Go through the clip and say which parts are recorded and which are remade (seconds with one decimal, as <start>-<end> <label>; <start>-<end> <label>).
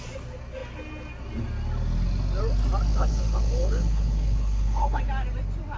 0.0-2.9 recorded; 2.9-5.0 remade; 5.0-5.8 recorded